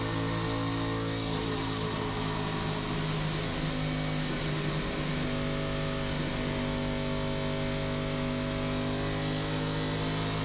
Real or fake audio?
real